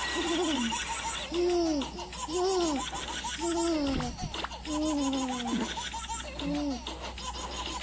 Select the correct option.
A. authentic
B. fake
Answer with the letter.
A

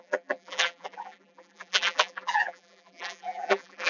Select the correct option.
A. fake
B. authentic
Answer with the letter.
A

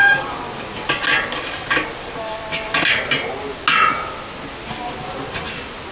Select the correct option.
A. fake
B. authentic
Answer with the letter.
B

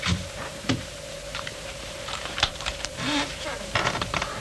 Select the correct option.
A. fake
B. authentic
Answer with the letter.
A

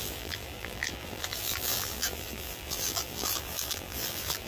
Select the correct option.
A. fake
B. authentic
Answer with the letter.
A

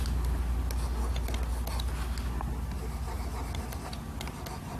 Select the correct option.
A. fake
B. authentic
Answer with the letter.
B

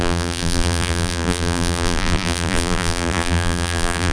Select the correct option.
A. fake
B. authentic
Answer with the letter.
A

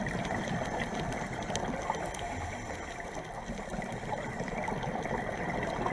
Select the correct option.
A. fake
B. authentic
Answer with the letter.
A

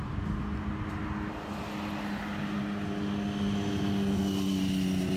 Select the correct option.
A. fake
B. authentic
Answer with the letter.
B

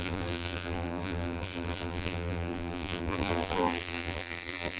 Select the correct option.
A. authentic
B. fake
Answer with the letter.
B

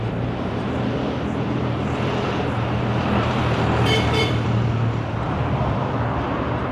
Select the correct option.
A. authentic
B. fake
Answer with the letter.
B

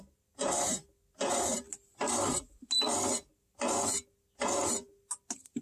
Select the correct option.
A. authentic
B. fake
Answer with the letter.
A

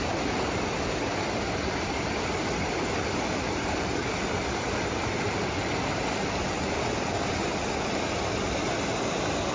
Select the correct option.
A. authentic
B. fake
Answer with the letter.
A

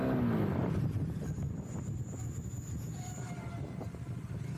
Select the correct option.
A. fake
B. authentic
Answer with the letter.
B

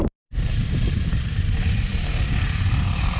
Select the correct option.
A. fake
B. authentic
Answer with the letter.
A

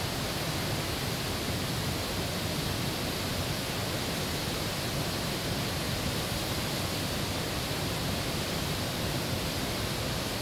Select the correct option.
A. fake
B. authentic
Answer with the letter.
A